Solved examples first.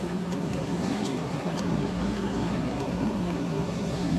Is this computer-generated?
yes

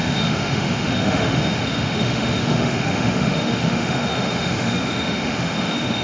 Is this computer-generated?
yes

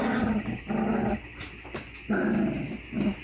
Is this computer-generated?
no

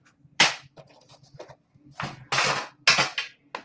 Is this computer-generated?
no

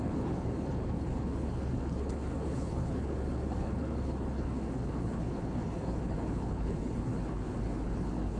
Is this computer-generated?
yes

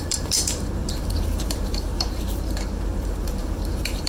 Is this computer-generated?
yes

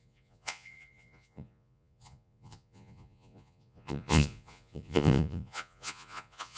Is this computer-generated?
yes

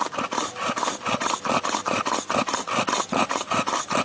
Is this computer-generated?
no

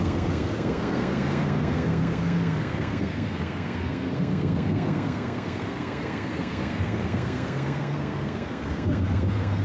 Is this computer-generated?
yes